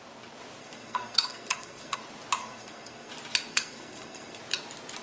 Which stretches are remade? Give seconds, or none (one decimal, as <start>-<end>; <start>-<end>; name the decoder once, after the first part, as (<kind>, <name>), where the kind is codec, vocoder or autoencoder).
0.6-2.0 (codec, SNAC); 2.4-3.1; 3.5-4.4